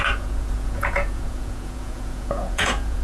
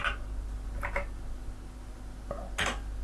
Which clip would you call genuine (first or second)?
second